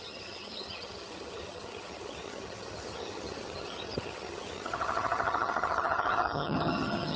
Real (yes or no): no